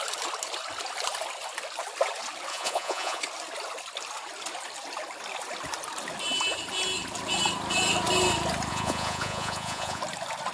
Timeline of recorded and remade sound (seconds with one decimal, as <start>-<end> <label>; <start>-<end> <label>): 0.0-2.5 recorded; 2.5-3.2 remade; 3.2-8.7 recorded; 8.7-10.0 remade; 10.0-10.5 recorded